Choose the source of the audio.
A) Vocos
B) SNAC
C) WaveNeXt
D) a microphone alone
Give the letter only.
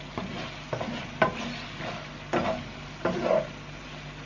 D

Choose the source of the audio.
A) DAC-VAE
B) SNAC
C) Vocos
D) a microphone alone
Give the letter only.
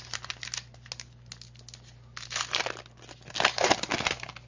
D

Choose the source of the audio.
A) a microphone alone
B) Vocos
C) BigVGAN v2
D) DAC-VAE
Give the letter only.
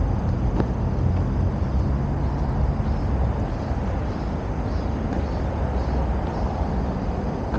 A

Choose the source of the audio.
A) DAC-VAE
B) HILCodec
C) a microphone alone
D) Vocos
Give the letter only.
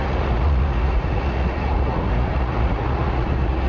D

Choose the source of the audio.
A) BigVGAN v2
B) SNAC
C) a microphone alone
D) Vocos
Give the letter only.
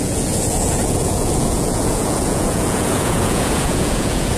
D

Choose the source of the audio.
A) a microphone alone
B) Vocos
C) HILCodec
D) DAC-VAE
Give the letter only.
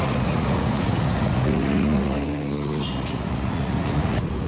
B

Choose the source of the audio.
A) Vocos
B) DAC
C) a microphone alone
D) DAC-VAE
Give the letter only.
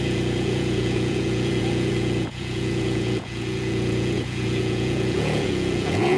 A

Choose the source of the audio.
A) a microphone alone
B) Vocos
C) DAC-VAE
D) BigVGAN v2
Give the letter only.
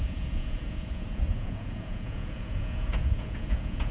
B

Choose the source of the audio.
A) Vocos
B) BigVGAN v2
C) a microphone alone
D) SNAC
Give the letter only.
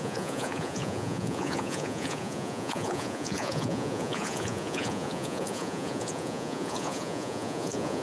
A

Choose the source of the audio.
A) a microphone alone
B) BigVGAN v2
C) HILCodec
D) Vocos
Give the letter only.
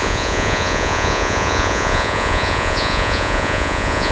D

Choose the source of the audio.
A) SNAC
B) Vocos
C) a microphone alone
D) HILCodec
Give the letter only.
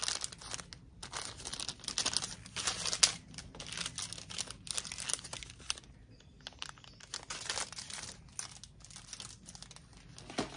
C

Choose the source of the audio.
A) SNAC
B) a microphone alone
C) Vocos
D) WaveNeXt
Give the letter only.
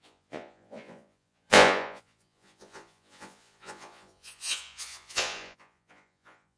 C